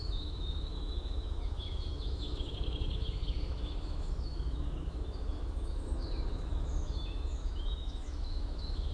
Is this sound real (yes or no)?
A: no